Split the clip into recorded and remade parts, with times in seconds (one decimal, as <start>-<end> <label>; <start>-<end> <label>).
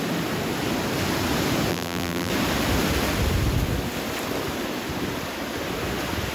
0.0-1.7 recorded; 1.7-2.3 remade; 2.3-6.3 recorded